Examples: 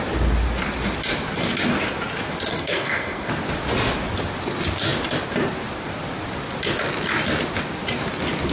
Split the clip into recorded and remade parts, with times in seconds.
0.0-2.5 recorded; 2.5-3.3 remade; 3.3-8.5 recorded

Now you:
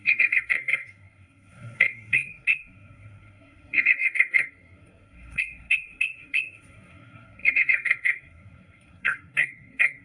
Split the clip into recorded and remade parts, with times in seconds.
0.0-10.0 remade

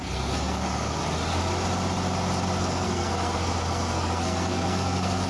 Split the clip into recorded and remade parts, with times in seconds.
0.0-1.0 remade; 1.0-2.6 recorded; 2.6-5.3 remade

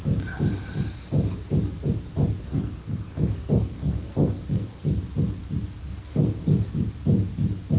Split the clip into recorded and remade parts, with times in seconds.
0.0-2.4 recorded; 2.4-5.0 remade; 5.0-5.8 recorded; 5.8-6.7 remade; 6.7-7.8 recorded

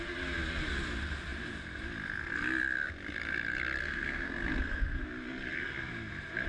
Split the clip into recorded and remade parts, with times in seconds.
0.0-3.8 recorded; 3.8-5.1 remade; 5.1-6.5 recorded

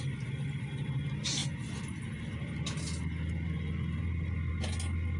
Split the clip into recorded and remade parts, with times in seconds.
0.0-5.2 recorded

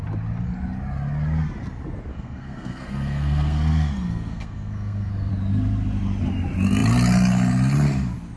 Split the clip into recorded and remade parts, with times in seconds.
0.0-2.1 recorded; 2.1-5.3 remade; 5.3-8.4 recorded

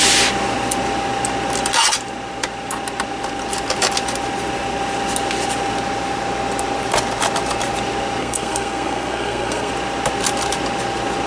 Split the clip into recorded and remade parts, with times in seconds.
0.0-8.2 recorded; 8.2-9.7 remade; 9.7-11.3 recorded